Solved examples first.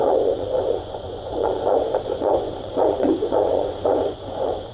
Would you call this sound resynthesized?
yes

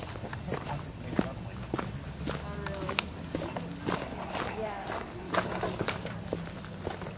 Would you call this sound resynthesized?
no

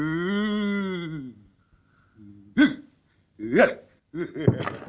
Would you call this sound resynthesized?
no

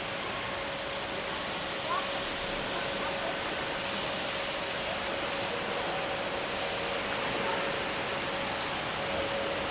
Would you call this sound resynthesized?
no